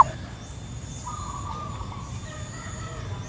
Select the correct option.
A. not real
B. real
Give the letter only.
B